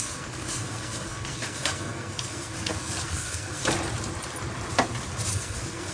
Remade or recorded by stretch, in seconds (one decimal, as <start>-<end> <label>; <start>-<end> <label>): 0.0-3.6 remade; 3.6-5.3 recorded; 5.3-5.9 remade